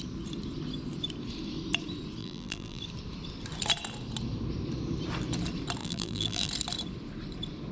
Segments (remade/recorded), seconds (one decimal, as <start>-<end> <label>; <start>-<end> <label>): 0.0-2.2 recorded; 2.2-2.8 remade; 2.8-5.8 recorded; 5.8-6.5 remade; 6.5-7.7 recorded